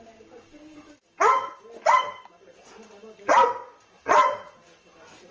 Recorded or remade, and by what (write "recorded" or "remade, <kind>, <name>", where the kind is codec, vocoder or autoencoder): recorded